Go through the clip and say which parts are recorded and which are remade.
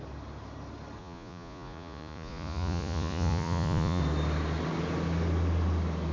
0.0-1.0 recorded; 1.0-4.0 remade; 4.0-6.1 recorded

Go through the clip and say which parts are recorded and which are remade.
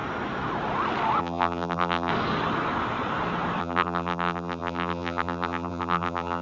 0.0-1.2 recorded; 1.2-2.1 remade; 2.1-3.6 recorded; 3.6-6.4 remade